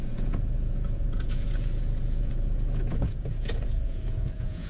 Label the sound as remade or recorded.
remade